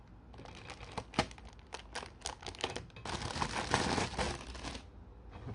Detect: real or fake real